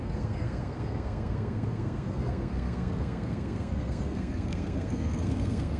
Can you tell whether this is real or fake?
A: fake